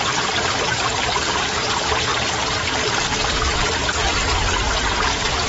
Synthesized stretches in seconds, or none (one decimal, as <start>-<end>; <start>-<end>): 0.0-2.1; 3.2-5.5